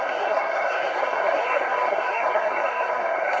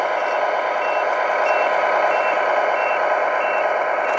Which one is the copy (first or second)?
first